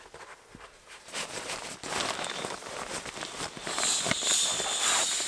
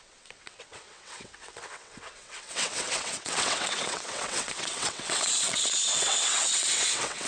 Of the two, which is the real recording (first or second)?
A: first